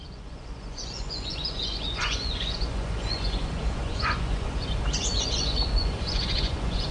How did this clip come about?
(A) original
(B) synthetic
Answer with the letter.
B